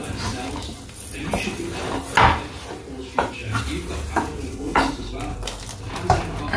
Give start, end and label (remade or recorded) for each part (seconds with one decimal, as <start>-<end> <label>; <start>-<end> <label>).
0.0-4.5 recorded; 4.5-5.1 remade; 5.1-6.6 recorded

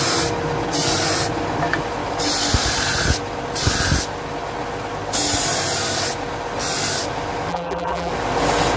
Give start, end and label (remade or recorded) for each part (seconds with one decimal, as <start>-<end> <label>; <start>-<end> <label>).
0.0-7.5 recorded; 7.5-8.1 remade; 8.1-8.8 recorded

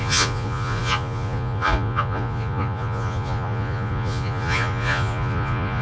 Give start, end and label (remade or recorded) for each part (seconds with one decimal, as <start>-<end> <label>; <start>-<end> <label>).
0.0-5.8 remade

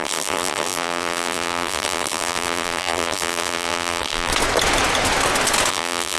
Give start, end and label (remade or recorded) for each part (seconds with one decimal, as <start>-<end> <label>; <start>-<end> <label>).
0.0-4.3 remade; 4.3-5.7 recorded; 5.7-6.2 remade

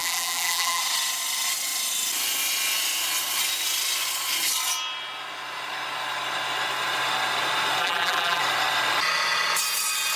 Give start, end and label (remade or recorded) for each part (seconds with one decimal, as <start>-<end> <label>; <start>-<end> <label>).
0.0-0.8 remade; 0.8-7.8 recorded; 7.8-8.4 remade; 8.4-10.2 recorded

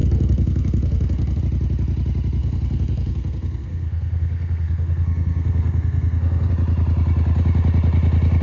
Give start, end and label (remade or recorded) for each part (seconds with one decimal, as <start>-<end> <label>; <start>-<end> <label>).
0.0-1.4 remade; 1.4-2.4 recorded; 2.4-6.5 remade; 6.5-8.4 recorded